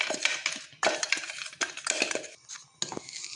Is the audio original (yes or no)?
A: yes